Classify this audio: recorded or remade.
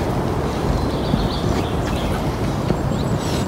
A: recorded